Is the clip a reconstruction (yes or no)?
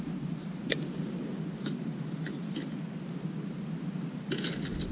no